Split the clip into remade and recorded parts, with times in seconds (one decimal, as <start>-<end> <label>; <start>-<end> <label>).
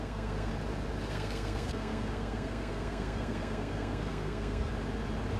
0.0-0.5 remade; 0.5-1.1 recorded; 1.1-4.7 remade; 4.7-5.4 recorded